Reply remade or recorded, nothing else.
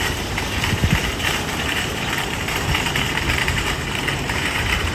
remade